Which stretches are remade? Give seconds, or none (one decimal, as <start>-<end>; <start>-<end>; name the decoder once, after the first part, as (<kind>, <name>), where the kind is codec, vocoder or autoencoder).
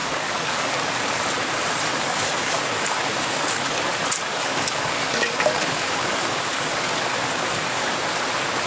0.0-1.2 (codec, DAC); 1.9-3.8; 4.3-7.9